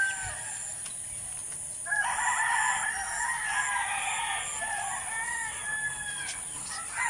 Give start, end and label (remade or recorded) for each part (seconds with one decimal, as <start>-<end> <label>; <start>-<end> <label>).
0.0-7.1 recorded